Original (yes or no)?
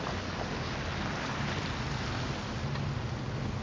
yes